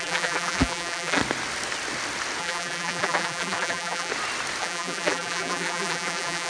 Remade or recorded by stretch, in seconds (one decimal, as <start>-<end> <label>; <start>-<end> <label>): 0.0-1.2 remade; 1.2-2.4 recorded; 2.4-4.1 remade; 4.1-4.6 recorded; 4.6-6.5 remade